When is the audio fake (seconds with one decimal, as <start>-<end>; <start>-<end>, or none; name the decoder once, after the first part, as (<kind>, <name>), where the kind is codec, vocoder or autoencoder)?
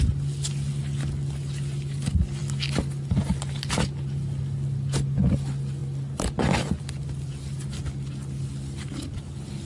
none